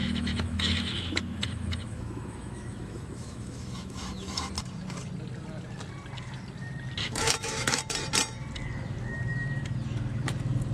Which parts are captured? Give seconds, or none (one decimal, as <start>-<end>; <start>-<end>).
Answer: 4.5-7.0; 7.8-10.7